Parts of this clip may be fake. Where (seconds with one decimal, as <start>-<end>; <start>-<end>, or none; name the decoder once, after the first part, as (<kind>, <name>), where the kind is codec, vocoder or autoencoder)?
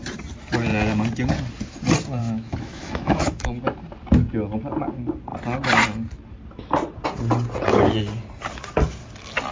2.2-3.4 (autoencoder, DAC-VAE)